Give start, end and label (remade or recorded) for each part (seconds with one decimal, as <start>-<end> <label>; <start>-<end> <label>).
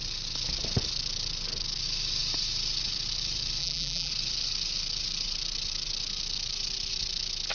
0.0-3.6 recorded; 3.6-4.1 remade; 4.1-7.5 recorded